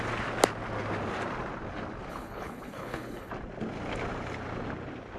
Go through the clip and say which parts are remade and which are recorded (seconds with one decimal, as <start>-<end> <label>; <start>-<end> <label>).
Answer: 0.0-2.1 recorded; 2.1-3.3 remade; 3.3-5.2 recorded